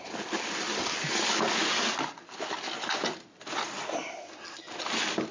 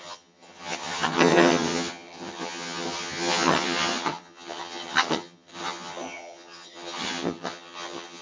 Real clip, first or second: first